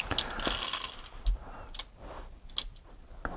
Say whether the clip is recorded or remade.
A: recorded